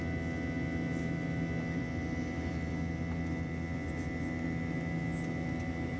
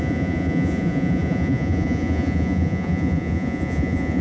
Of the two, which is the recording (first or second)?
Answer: first